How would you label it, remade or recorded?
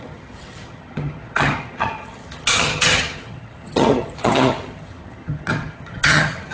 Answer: remade